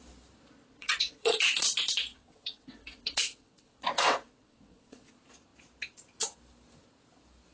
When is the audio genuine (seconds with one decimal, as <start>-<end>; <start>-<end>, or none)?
0.0-0.7; 1.4-2.1; 5.1-7.5